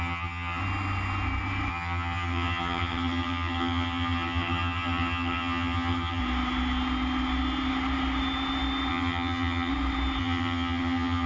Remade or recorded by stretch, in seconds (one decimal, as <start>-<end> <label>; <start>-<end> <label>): 0.0-0.6 remade; 0.6-1.7 recorded; 1.7-6.2 remade; 6.2-8.9 recorded; 8.9-9.7 remade; 9.7-10.2 recorded; 10.2-11.3 remade